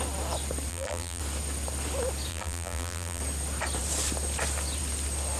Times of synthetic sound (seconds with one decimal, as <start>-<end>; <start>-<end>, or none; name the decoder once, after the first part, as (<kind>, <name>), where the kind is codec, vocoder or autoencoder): 0.7-1.2 (vocoder, BigVGAN v2); 2.3-3.2